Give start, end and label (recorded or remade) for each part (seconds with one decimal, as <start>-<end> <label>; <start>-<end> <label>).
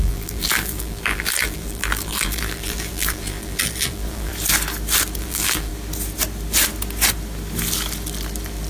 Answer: 0.0-4.3 remade; 4.3-5.2 recorded; 5.2-5.7 remade; 5.7-8.7 recorded